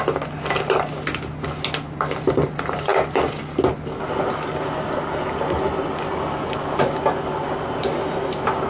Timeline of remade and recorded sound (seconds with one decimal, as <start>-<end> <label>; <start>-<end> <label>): 0.0-8.7 recorded